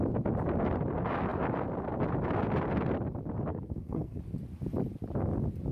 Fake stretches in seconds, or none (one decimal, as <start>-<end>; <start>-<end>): 3.5-4.2